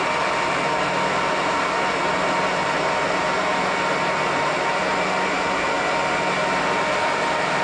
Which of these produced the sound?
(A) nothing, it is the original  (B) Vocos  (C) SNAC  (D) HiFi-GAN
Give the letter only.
A